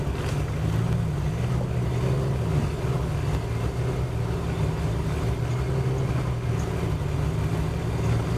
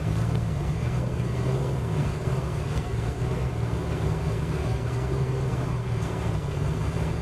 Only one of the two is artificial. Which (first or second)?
second